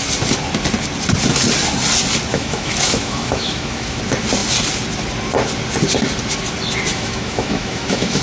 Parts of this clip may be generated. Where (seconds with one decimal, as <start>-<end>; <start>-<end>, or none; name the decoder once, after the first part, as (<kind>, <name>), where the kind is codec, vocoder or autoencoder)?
2.3-4.0 (autoencoder, DAC-VAE); 6.9-8.2